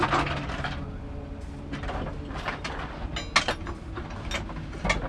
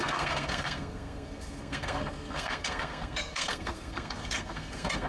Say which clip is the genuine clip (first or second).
first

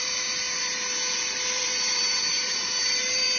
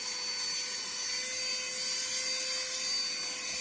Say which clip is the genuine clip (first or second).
second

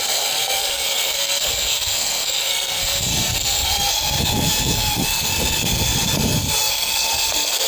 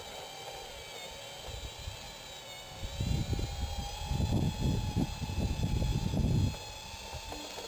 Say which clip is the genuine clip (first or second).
second